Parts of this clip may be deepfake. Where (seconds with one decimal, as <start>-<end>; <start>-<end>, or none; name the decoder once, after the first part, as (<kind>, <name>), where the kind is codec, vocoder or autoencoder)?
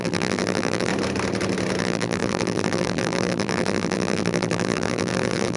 0.0-0.9 (vocoder, BigVGAN v2); 1.8-5.6